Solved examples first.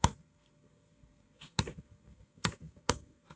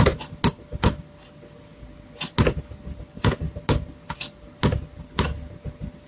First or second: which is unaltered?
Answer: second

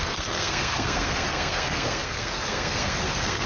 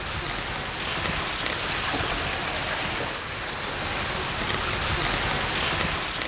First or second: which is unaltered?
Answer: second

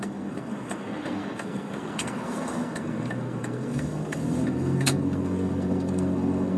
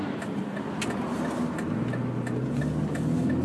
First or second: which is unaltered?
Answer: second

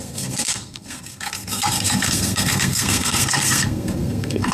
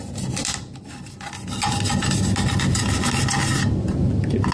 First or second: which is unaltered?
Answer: second